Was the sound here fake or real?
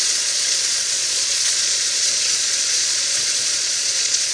fake